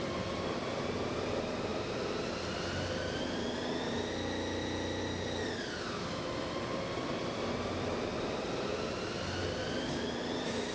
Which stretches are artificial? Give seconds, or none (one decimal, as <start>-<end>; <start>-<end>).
none